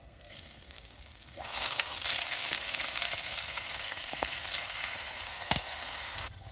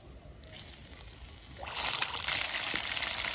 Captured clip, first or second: second